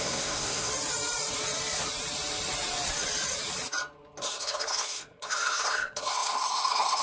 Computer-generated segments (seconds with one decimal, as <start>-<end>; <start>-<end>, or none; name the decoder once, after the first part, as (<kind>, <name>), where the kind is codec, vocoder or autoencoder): 0.0-0.7 (codec, SNAC); 4.2-7.0